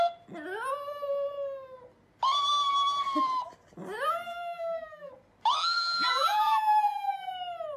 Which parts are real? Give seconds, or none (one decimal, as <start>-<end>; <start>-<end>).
0.0-4.3; 5.1-5.6; 7.3-7.8